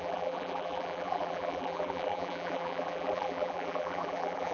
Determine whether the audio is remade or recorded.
remade